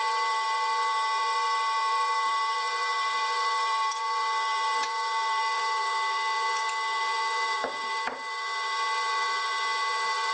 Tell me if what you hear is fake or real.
fake